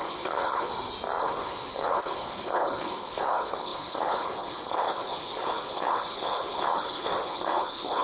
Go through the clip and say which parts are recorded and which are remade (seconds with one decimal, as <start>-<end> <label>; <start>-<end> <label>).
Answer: 0.0-0.7 remade; 0.7-1.2 recorded; 1.2-8.0 remade